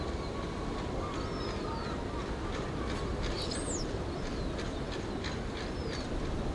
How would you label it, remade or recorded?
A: recorded